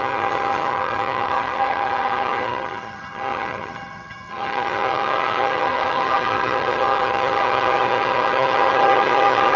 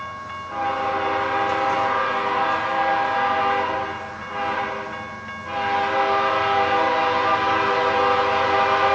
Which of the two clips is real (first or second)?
second